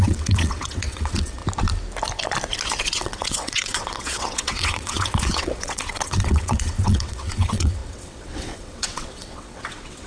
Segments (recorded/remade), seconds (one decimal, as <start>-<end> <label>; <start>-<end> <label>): 0.0-1.4 remade; 1.4-2.8 recorded; 2.8-10.1 remade